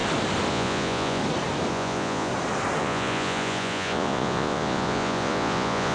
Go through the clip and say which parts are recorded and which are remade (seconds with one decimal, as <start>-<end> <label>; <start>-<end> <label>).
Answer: 0.0-0.5 recorded; 0.5-1.2 remade; 1.2-1.7 recorded; 1.7-2.3 remade; 2.3-2.8 recorded; 2.8-5.9 remade